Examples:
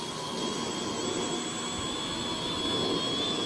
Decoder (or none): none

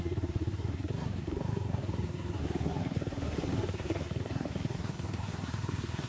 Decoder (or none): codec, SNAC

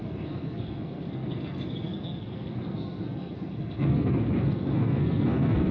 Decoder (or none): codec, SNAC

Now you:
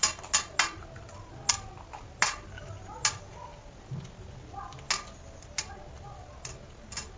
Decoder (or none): none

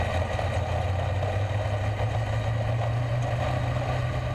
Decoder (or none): none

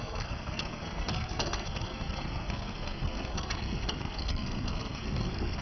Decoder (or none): codec, SNAC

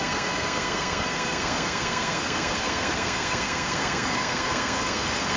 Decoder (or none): codec, SNAC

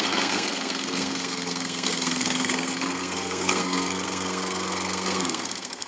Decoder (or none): codec, SNAC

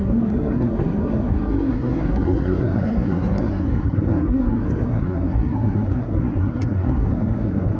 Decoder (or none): codec, SNAC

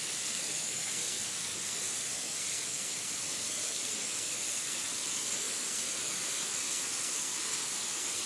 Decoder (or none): codec, SNAC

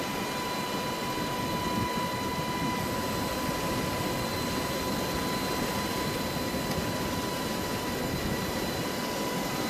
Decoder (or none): none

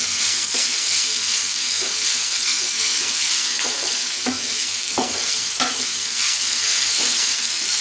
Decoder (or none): codec, SNAC